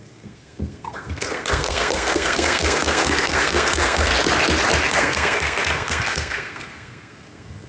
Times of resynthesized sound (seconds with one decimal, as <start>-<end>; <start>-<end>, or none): 0.0-4.1; 4.9-7.7